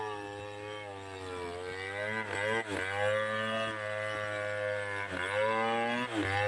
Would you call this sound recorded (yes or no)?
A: yes